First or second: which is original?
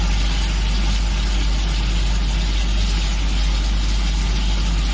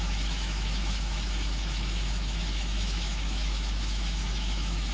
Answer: first